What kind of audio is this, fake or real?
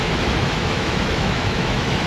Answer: fake